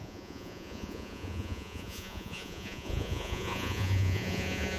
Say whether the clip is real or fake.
fake